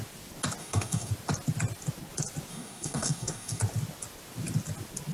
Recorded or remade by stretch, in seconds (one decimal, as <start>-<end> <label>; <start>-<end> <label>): 0.0-0.6 recorded; 0.6-1.1 remade; 1.1-2.5 recorded; 2.5-3.6 remade; 3.6-5.1 recorded

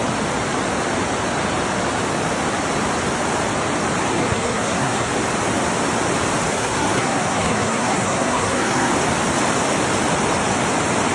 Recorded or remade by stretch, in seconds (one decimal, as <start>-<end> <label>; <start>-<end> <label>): 0.0-4.1 recorded; 4.1-5.1 remade; 5.1-6.5 recorded; 6.5-8.9 remade; 8.9-11.1 recorded

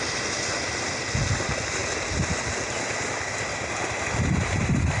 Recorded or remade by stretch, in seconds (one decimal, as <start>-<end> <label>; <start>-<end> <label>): 0.0-5.0 recorded

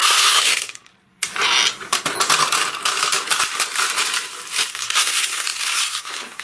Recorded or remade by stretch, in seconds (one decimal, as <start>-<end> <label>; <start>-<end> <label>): 0.0-0.9 remade; 0.9-4.7 recorded; 4.7-6.4 remade